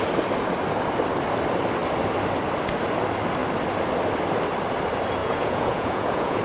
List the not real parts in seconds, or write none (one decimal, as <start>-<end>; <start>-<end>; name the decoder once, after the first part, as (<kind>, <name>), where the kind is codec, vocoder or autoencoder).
5.2-6.4 (vocoder, Vocos)